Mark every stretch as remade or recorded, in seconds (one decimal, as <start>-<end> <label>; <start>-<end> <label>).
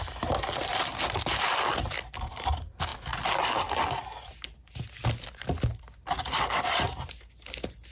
0.0-7.9 recorded